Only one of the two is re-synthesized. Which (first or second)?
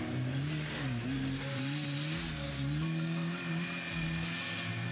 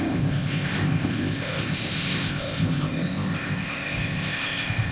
second